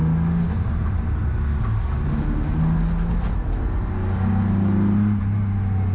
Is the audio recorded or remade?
recorded